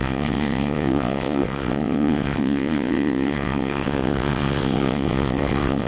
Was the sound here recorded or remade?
remade